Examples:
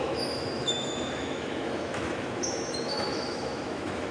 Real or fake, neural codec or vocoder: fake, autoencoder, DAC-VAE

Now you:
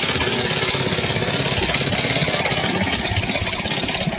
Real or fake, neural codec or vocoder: real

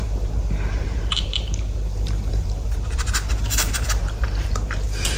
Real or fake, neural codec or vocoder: fake, vocoder, BigVGAN v2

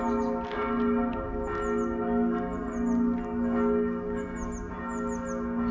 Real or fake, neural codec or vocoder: real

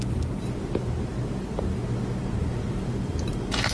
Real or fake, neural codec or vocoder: real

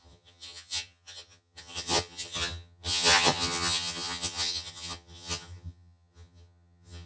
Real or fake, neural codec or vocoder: fake, vocoder, HiFi-GAN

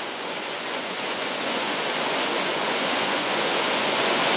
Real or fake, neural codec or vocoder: fake, vocoder, Vocos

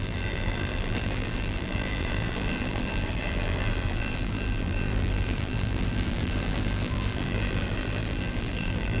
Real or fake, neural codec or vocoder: fake, vocoder, BigVGAN v2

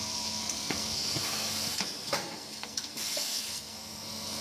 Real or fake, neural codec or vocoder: fake, codec, SNAC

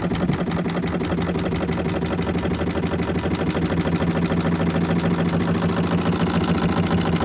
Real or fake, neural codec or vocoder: real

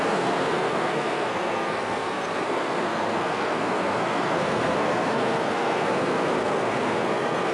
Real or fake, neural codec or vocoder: fake, codec, SNAC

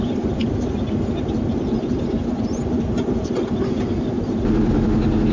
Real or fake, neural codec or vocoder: real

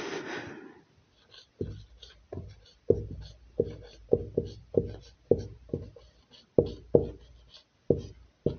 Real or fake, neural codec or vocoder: real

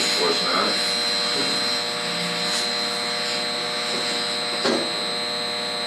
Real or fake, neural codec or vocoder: real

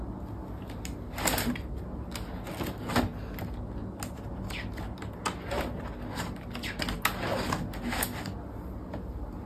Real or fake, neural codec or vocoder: real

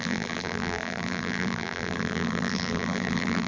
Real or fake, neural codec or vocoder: fake, vocoder, BigVGAN v2